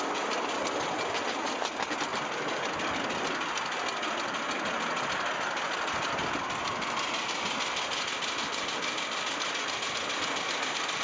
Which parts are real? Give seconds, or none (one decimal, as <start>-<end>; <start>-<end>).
0.0-11.0